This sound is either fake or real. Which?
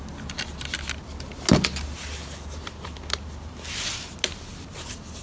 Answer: real